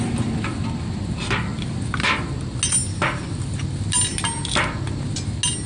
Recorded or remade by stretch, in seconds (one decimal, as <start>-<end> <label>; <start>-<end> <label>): 0.0-5.7 recorded